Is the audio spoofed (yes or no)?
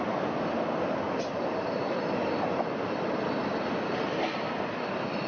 no